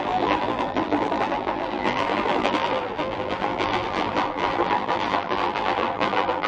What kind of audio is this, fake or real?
fake